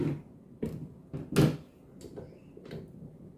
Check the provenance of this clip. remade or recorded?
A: recorded